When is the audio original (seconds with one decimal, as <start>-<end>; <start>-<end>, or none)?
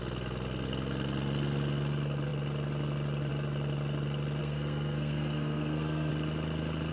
0.0-4.4; 6.1-6.9